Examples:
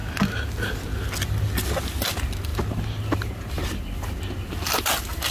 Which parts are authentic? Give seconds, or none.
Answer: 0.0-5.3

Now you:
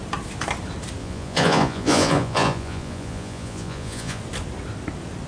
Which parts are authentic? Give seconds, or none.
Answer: 0.0-1.0; 4.2-5.3

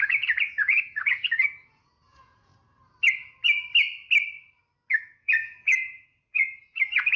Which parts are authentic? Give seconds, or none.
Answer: 2.5-5.0

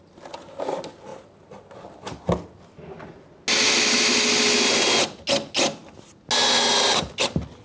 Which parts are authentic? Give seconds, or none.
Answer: 0.0-7.6

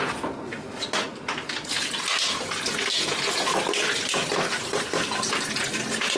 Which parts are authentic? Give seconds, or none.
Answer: 0.0-2.9; 3.4-6.2

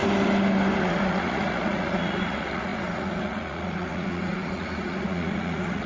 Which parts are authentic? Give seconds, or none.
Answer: 0.0-0.8

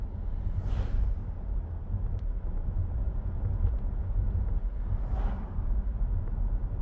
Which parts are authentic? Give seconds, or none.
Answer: 0.0-3.0; 4.7-6.8